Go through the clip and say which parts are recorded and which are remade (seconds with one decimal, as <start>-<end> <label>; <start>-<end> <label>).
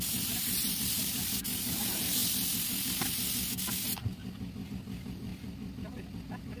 0.0-2.2 remade; 2.2-2.7 recorded; 2.7-4.2 remade; 4.2-4.7 recorded; 4.7-5.3 remade; 5.3-6.6 recorded